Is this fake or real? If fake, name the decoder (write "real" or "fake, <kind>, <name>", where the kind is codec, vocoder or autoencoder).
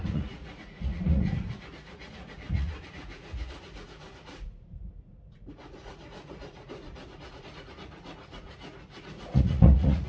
fake, vocoder, Vocos